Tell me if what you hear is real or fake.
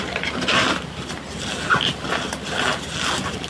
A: real